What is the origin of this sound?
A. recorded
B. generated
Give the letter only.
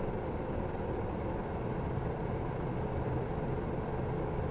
A